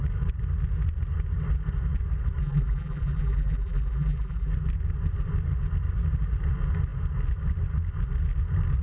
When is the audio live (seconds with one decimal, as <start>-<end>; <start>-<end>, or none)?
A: 0.0-2.4; 4.5-8.8